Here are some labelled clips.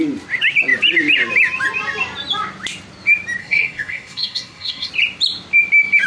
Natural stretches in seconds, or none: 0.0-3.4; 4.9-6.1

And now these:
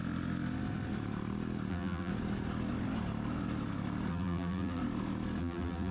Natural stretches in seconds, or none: 0.0-1.7; 2.1-4.1; 4.8-5.4

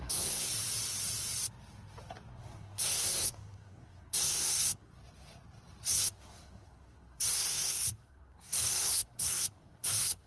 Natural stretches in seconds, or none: 0.5-2.3; 4.9-5.9

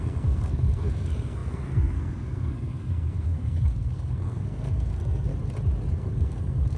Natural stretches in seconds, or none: 5.3-5.9

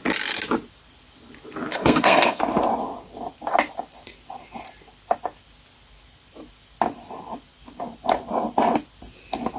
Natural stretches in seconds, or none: 0.0-1.7; 2.4-9.6

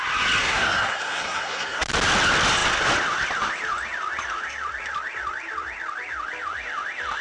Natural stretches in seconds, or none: 0.0-0.4; 1.8-7.2

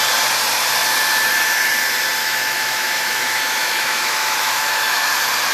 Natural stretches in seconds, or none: 0.0-2.2; 5.1-5.5